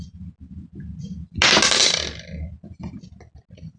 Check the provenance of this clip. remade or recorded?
recorded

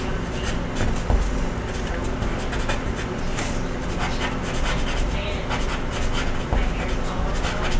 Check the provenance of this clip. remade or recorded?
recorded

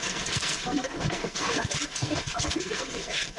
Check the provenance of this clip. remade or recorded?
remade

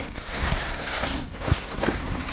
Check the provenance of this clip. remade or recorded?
remade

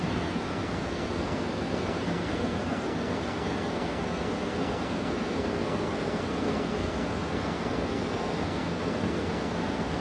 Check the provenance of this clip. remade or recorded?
remade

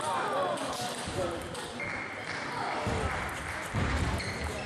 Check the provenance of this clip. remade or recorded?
recorded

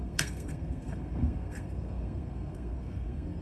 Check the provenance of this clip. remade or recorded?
remade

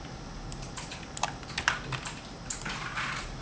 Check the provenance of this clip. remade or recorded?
recorded